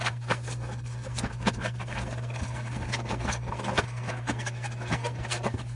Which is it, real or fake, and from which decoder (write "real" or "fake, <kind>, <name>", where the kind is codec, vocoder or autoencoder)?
fake, codec, SNAC